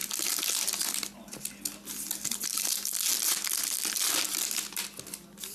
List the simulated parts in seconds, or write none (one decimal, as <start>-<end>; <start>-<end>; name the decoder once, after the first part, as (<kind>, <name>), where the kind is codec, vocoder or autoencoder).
none